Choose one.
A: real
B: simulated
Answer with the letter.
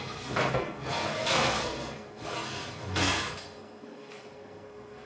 B